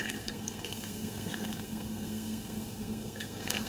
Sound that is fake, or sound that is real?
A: fake